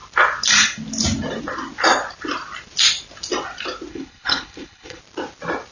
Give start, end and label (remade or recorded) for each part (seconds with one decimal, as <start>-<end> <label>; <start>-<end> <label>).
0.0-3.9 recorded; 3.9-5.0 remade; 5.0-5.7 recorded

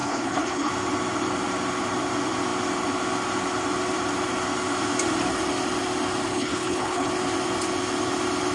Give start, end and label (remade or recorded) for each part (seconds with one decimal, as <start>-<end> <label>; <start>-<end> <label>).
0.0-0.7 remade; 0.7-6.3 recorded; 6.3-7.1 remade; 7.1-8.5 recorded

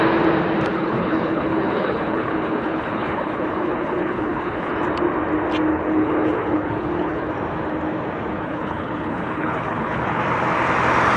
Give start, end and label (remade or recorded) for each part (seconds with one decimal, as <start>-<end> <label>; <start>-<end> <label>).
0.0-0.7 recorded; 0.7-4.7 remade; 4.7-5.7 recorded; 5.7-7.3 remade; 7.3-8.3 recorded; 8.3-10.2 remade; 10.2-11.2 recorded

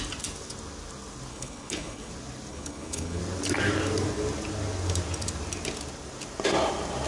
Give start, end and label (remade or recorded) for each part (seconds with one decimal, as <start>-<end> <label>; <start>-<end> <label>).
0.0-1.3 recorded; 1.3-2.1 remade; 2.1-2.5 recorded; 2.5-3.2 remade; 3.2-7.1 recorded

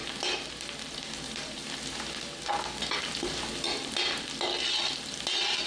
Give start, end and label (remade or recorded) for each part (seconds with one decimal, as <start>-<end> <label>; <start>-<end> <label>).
0.0-5.7 recorded